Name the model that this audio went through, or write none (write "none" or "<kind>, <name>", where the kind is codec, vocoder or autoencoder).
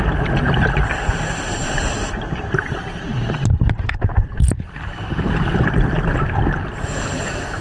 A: none